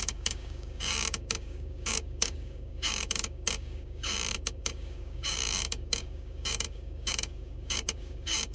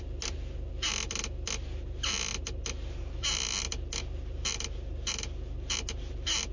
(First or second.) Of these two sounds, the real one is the second